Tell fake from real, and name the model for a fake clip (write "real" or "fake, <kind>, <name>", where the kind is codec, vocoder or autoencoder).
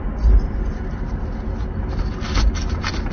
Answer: real